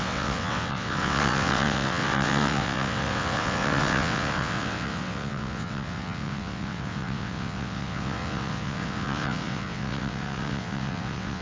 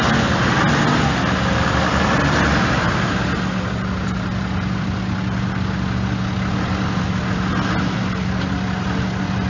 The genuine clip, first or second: second